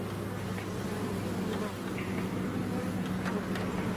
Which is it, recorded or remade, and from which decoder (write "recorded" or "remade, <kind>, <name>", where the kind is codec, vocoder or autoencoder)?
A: recorded